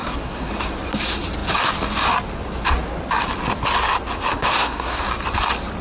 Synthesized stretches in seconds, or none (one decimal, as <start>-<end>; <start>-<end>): 0.0-0.5; 4.3-5.0